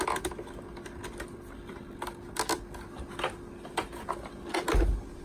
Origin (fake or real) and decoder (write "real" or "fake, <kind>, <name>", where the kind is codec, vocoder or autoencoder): real